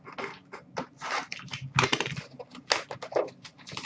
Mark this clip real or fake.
real